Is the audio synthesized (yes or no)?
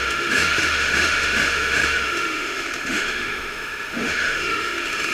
yes